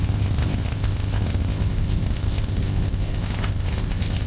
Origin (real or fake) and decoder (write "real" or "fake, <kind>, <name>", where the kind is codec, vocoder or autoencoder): fake, codec, ZipCodec